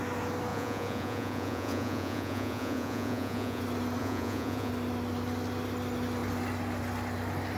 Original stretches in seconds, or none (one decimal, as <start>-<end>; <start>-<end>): 0.0-0.5; 3.6-4.0; 4.7-7.6

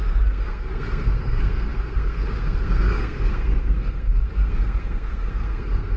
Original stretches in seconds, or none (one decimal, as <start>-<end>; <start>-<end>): none

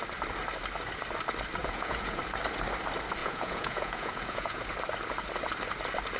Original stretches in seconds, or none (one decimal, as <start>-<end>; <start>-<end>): 0.0-1.6; 2.2-3.2; 4.7-6.2

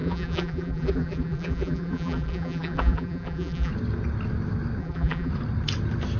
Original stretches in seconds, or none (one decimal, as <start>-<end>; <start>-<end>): 3.7-4.8; 5.3-6.2